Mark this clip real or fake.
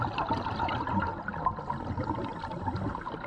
real